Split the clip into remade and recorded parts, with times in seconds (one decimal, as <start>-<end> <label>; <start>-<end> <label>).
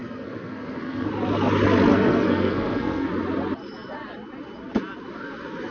0.0-1.1 remade; 1.1-1.9 recorded; 1.9-3.1 remade; 3.1-5.7 recorded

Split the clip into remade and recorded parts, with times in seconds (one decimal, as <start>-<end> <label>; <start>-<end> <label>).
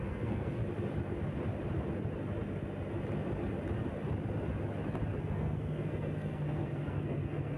0.0-0.6 remade; 0.6-5.2 recorded; 5.2-7.6 remade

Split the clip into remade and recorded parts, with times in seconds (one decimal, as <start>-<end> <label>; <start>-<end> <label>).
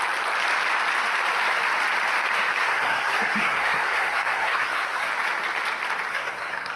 0.0-2.6 recorded; 2.6-5.1 remade; 5.1-6.1 recorded; 6.1-6.8 remade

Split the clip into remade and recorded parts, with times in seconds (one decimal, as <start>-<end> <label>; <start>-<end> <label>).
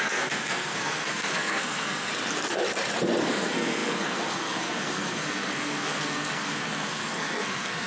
0.0-2.1 remade; 2.1-3.2 recorded; 3.2-7.9 remade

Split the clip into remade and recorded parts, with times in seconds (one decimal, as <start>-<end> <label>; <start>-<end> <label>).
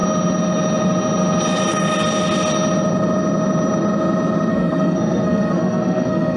0.0-4.5 recorded; 4.5-6.4 remade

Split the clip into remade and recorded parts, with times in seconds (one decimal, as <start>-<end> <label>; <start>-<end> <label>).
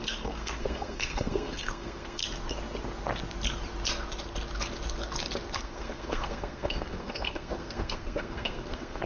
0.0-2.2 remade; 2.2-5.6 recorded; 5.6-9.1 remade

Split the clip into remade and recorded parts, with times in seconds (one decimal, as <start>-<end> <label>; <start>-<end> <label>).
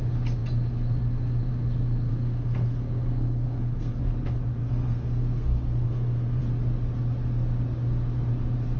0.0-2.1 recorded; 2.1-4.0 remade; 4.0-4.6 recorded; 4.6-6.4 remade; 6.4-8.8 recorded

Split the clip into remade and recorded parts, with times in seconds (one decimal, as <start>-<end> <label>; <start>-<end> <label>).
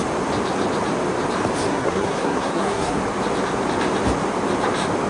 0.0-1.7 recorded; 1.7-3.0 remade; 3.0-5.1 recorded